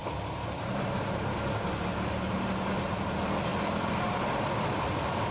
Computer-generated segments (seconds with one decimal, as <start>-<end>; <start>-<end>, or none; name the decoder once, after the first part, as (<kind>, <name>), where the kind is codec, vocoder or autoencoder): none